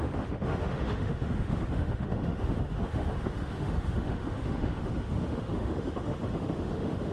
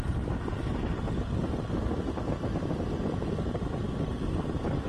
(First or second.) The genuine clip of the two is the second